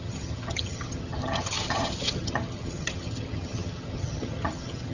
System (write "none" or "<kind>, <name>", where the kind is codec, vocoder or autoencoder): vocoder, HiFi-GAN